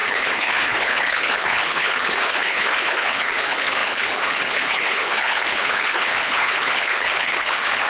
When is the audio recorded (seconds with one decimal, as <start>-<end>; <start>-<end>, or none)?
none